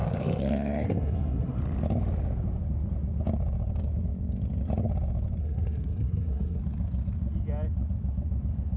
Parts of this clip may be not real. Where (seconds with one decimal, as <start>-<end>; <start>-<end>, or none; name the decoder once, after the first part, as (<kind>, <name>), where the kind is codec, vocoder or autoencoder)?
0.0-1.6 (codec, SNAC); 5.4-6.6

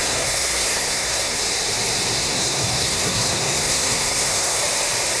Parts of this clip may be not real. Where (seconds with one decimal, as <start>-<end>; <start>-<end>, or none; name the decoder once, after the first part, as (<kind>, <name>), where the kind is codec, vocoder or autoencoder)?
0.0-1.4 (codec, SNAC); 2.2-4.6

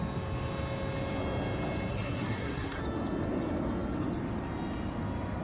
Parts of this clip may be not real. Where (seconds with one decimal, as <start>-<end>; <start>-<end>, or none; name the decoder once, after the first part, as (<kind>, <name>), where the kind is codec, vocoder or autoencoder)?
1.9-2.8 (codec, SNAC)

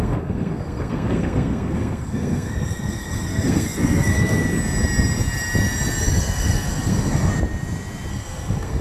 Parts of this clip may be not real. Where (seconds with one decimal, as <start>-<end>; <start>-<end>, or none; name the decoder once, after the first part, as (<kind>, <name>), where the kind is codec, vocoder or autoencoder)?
0.0-4.4 (codec, SNAC); 6.2-7.3; 8.1-8.8

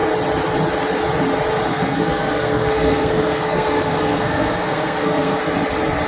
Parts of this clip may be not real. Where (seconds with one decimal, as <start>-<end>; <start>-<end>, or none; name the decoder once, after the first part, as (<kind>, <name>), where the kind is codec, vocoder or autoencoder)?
1.7-5.4 (codec, SNAC)

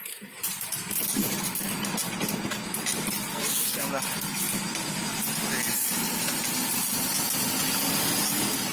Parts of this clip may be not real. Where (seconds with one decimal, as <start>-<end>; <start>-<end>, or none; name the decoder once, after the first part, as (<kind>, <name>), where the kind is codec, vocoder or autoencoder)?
3.3-3.9 (codec, SNAC)